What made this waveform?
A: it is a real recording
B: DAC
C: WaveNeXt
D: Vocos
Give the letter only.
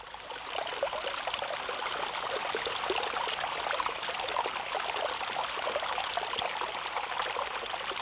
A